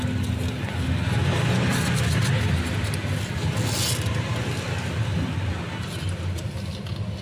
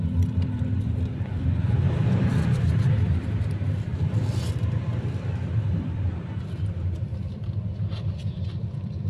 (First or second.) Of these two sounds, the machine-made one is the second